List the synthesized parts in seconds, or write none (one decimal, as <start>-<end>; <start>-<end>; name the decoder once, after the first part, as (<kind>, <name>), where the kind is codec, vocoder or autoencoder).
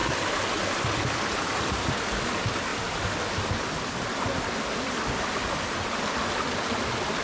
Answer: none